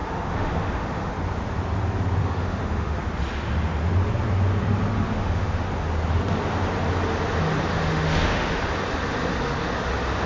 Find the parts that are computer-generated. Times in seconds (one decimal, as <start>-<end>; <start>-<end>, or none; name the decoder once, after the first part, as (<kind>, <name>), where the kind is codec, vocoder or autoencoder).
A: 0.0-1.1 (autoencoder, DAC-VAE); 2.2-3.0; 4.9-5.7; 7.7-8.6